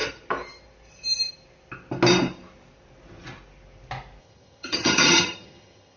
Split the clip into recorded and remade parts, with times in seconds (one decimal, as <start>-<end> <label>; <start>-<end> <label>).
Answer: 0.0-4.2 recorded; 4.2-6.0 remade